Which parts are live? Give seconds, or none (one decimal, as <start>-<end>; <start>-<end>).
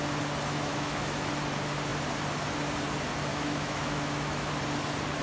0.0-0.7; 1.3-3.3; 4.5-5.2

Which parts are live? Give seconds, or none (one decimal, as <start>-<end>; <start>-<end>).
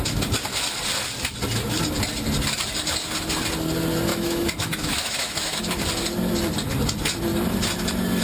0.0-4.1; 5.6-8.2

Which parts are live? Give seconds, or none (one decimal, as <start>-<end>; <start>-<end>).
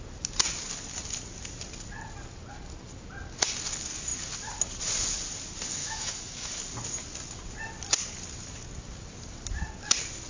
0.0-5.8; 6.5-10.3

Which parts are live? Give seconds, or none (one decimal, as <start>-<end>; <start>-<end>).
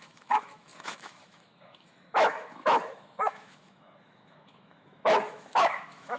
none